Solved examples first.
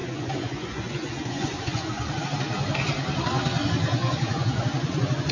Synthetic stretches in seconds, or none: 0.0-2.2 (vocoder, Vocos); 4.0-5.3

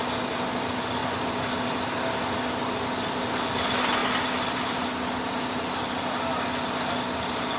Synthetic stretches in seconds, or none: none

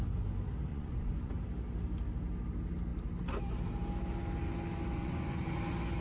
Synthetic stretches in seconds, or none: 0.7-1.3 (vocoder, Vocos); 5.0-5.6

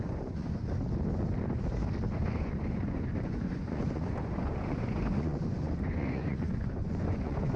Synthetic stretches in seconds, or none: 0.0-0.6 (vocoder, Vocos); 2.1-7.6

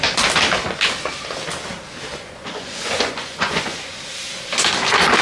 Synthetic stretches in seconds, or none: 2.1-4.0 (vocoder, Vocos)

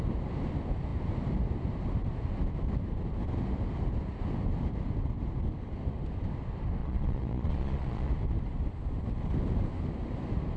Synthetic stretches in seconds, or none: 6.8-8.1 (vocoder, Vocos)

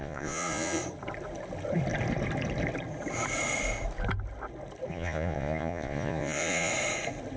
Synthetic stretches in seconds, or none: 0.0-0.8 (vocoder, Vocos); 4.9-6.7

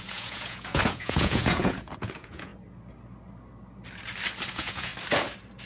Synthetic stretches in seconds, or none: 0.0-2.5 (vocoder, Vocos); 4.5-4.9